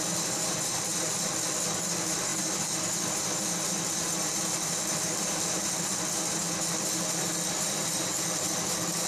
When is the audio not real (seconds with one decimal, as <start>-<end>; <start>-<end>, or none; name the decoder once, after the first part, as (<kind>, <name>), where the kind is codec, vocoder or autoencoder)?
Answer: none